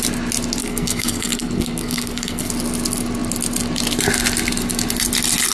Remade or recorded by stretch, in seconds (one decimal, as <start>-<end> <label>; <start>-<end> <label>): 0.0-0.6 recorded; 0.6-2.5 remade; 2.5-5.5 recorded